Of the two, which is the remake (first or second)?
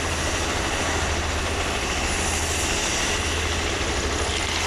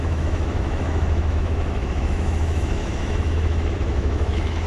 second